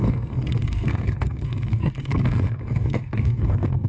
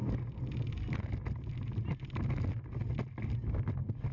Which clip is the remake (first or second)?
first